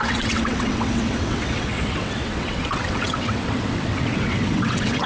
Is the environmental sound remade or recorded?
remade